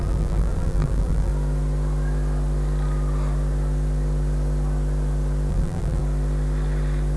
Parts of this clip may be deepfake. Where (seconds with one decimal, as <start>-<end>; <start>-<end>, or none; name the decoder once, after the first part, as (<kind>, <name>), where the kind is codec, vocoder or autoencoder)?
0.0-1.3 (vocoder, BigVGAN v2); 5.5-6.0